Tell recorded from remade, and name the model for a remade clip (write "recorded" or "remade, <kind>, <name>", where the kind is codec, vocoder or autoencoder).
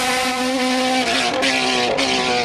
recorded